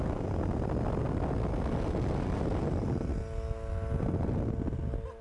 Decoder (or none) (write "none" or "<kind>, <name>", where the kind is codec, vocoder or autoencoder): none